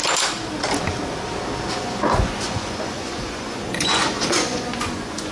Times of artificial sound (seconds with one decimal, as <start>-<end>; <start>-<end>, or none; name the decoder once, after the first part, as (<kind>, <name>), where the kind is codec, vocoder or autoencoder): 1.7-5.3 (vocoder, Vocos)